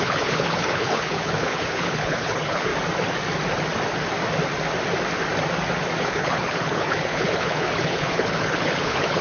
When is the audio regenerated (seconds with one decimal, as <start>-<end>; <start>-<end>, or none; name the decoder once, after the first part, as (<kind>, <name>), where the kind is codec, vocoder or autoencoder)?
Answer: 0.0-2.7 (codec, HILCodec); 6.0-9.2